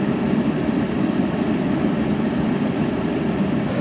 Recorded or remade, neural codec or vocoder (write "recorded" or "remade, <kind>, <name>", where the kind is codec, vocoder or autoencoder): recorded